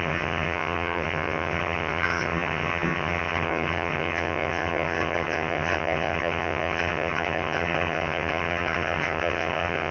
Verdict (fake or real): fake